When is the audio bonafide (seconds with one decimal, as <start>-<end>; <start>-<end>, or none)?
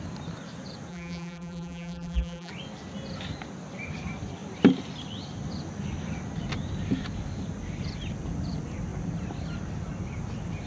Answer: 0.0-0.9; 2.5-10.7